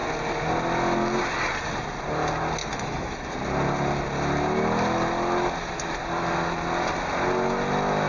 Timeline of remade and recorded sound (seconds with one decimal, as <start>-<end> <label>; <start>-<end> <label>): 0.0-2.6 recorded; 2.6-3.3 remade; 3.3-8.1 recorded